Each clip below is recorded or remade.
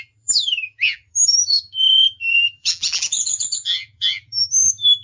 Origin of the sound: remade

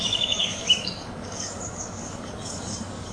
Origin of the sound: remade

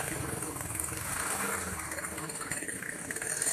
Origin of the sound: remade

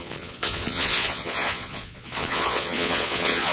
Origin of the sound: remade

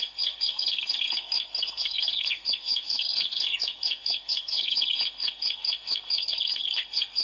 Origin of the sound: remade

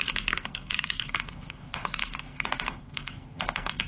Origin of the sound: remade